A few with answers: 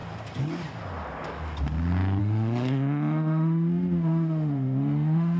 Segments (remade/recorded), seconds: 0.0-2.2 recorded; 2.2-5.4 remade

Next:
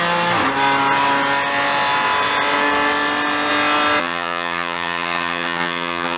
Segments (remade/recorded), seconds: 0.0-4.0 recorded; 4.0-6.2 remade

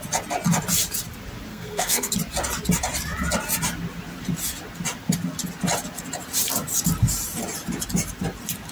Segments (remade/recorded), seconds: 0.0-1.5 recorded; 1.5-2.1 remade; 2.1-8.7 recorded

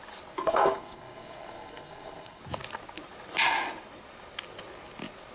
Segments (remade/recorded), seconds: 0.0-0.4 recorded; 0.4-2.4 remade; 2.4-5.3 recorded